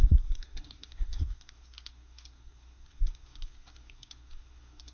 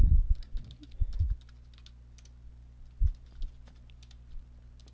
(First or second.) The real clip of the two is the second